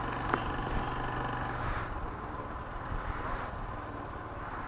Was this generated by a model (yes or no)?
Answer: no